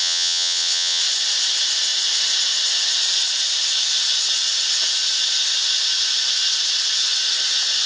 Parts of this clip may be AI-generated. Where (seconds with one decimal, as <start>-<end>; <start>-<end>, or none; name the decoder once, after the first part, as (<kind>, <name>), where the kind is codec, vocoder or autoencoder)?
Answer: 0.0-1.0 (vocoder, WaveNeXt)